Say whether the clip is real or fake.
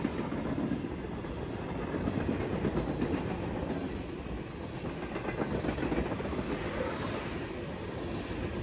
fake